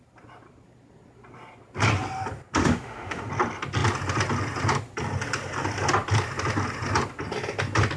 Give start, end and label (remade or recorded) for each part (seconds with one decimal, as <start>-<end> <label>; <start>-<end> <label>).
0.0-2.6 recorded; 2.6-3.3 remade; 3.3-8.0 recorded